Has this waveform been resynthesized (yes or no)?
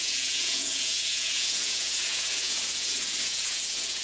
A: yes